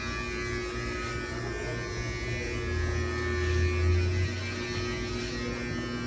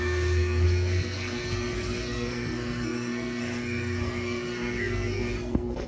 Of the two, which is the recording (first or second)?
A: first